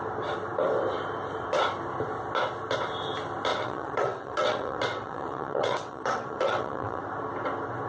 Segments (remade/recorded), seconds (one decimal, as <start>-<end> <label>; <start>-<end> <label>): 0.0-3.5 recorded; 3.5-7.0 remade; 7.0-7.9 recorded

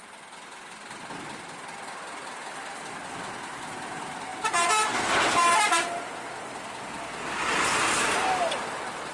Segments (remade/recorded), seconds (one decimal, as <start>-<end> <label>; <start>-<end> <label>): 0.0-9.1 recorded